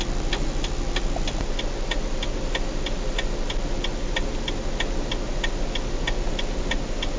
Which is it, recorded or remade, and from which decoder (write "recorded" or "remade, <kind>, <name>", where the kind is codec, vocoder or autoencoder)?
recorded